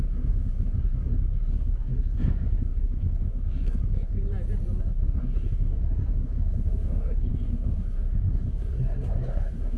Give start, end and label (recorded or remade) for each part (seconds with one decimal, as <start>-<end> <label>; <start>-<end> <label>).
0.0-4.1 remade; 4.1-4.8 recorded; 4.8-9.8 remade